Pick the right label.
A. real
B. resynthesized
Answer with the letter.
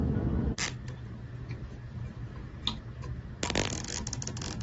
A